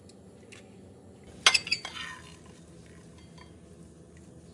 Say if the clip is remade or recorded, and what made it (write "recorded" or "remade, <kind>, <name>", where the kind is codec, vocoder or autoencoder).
recorded